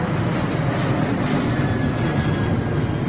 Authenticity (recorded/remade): recorded